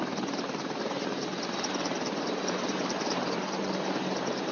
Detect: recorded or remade remade